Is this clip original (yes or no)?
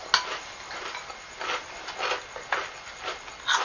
yes